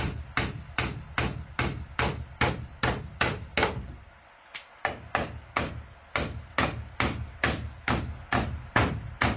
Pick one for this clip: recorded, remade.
recorded